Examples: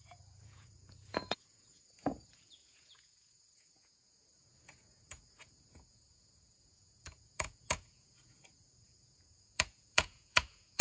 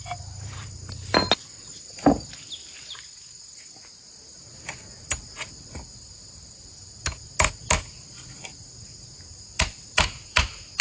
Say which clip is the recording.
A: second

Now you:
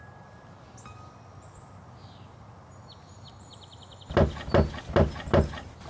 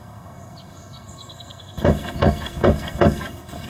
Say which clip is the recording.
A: first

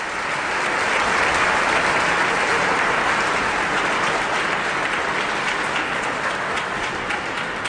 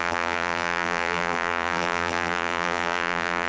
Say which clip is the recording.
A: first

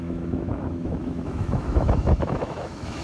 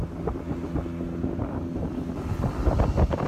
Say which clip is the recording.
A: second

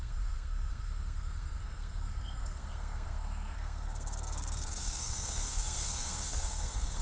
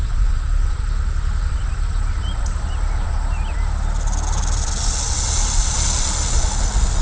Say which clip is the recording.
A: second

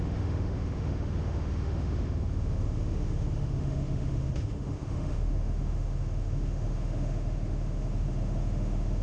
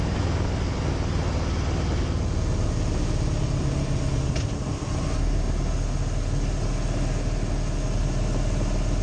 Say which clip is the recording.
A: second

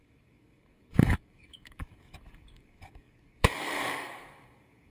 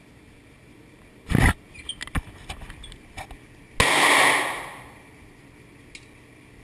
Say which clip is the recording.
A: second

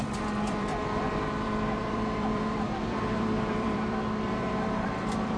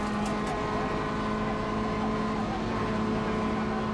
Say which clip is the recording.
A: second